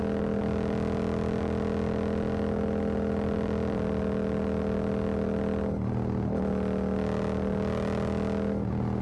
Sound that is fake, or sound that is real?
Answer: real